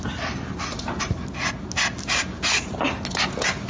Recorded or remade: recorded